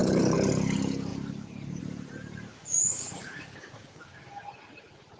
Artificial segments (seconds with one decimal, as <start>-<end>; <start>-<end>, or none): 2.5-4.4